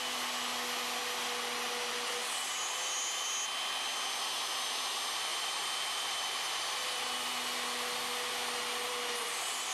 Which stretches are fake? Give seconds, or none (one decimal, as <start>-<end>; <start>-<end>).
none